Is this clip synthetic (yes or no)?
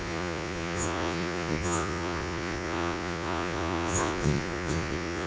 yes